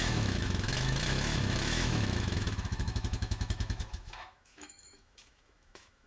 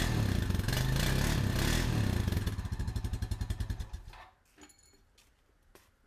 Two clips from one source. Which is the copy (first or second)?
first